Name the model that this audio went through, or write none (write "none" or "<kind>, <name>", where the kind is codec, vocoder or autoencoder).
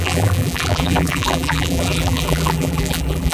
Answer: vocoder, BigVGAN v2